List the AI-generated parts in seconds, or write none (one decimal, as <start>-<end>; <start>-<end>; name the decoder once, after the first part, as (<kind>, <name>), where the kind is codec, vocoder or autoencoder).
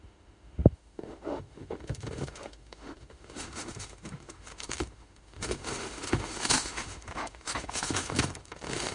0.0-8.9 (autoencoder, DAC-VAE)